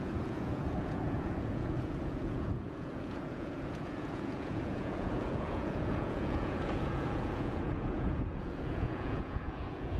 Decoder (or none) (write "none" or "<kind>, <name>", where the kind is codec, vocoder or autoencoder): vocoder, Vocos